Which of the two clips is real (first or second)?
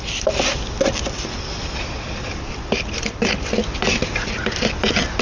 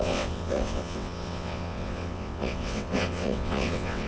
first